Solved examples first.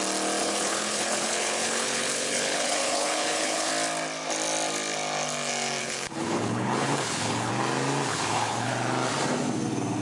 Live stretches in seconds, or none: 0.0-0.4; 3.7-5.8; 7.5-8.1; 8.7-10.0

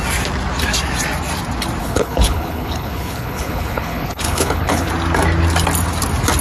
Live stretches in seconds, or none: 0.0-1.8; 4.9-6.4

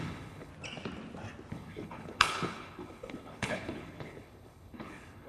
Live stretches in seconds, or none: 0.5-1.5

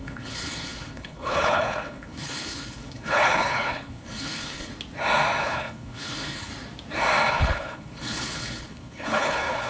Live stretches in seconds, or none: 4.7-5.4; 6.5-7.3

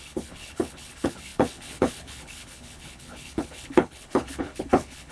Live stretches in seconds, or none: none

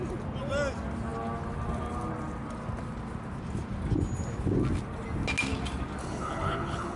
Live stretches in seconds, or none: 0.0-6.0

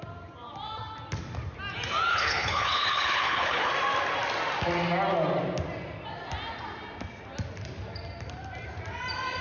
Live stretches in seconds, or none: 0.0-2.1; 3.7-9.4